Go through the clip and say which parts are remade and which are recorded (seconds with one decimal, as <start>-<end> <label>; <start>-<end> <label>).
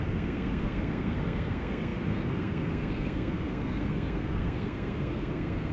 0.0-5.7 remade